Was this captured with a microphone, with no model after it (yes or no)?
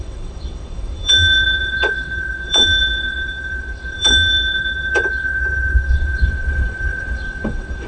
no